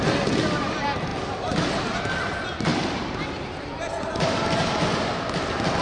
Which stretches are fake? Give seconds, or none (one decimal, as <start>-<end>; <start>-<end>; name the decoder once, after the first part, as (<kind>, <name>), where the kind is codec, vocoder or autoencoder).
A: none